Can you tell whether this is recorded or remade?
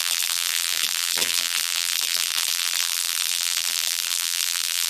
remade